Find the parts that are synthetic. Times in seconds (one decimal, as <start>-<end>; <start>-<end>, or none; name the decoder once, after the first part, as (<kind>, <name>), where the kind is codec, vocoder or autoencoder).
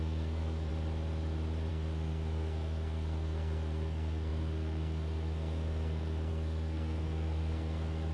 0.0-0.7 (codec, SNAC); 1.7-8.1